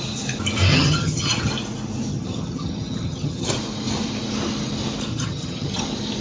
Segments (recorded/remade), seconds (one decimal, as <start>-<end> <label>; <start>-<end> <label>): 0.0-0.7 recorded; 0.7-1.5 remade; 1.5-2.1 recorded; 2.1-3.5 remade; 3.5-5.1 recorded; 5.1-5.8 remade; 5.8-6.2 recorded